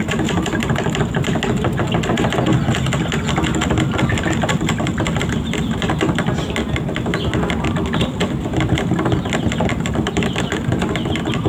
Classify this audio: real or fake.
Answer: real